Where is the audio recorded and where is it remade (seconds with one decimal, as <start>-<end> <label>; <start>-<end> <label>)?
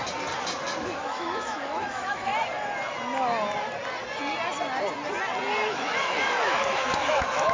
0.0-0.8 recorded; 0.8-2.3 remade; 2.3-5.7 recorded; 5.7-7.5 remade